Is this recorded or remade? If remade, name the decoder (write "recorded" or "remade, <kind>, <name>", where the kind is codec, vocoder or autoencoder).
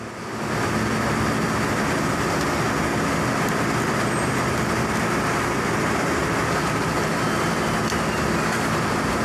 recorded